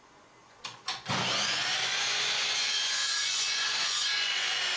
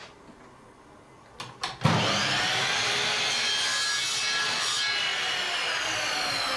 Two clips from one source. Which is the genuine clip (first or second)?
second